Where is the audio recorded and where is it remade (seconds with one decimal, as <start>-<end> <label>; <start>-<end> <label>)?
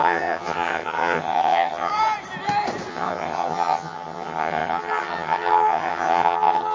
0.0-1.9 remade; 1.9-2.9 recorded; 2.9-6.7 remade